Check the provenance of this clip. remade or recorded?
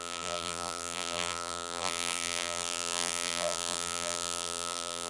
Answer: remade